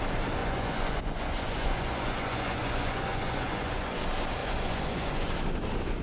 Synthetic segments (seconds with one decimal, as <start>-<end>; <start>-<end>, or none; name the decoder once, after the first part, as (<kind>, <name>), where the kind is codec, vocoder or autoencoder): 0.4-4.0 (vocoder, Vocos); 4.4-5.3